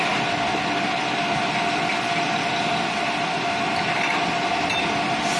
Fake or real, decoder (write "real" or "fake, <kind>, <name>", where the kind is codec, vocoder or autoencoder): real